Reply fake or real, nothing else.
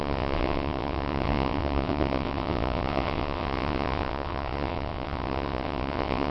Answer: fake